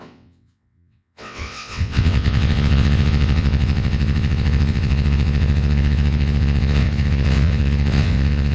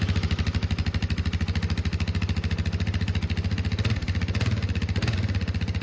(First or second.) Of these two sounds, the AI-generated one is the first